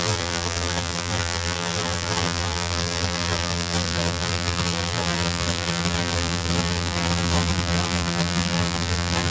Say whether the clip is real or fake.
fake